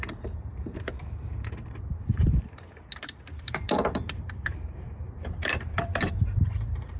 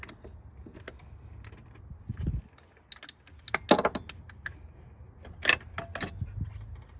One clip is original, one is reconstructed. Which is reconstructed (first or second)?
first